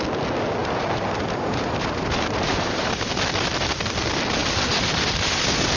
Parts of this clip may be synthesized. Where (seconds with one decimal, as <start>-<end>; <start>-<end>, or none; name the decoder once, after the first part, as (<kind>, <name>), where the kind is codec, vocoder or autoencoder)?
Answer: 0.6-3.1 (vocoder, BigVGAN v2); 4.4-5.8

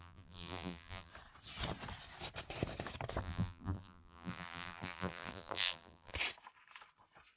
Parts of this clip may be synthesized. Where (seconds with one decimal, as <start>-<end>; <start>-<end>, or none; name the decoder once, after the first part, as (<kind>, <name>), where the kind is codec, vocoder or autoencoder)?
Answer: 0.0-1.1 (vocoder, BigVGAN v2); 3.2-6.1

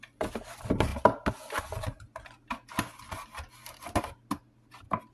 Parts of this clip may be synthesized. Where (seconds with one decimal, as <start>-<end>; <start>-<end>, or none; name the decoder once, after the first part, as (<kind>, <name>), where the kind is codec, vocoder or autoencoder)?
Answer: none